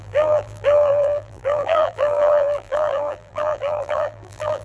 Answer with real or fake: fake